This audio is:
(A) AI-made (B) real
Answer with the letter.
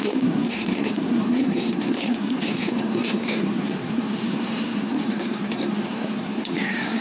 A